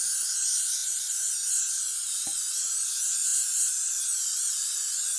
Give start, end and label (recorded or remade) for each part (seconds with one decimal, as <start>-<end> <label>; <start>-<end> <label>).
0.0-3.3 recorded; 3.3-4.0 remade; 4.0-5.2 recorded